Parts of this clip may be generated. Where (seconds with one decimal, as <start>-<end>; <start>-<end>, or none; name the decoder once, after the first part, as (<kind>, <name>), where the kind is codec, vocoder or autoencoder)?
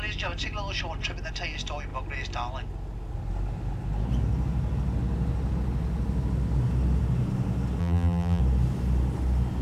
7.8-8.4 (vocoder, BigVGAN v2)